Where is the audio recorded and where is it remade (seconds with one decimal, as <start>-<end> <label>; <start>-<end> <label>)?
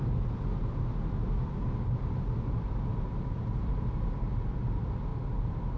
0.0-5.8 recorded